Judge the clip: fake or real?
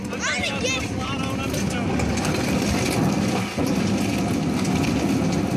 real